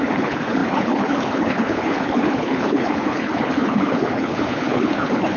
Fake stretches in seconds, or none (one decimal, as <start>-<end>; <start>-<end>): 0.0-5.4